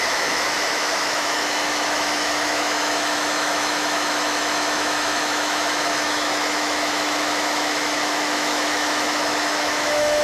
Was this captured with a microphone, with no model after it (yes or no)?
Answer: no